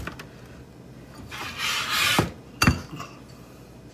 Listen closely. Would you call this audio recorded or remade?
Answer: recorded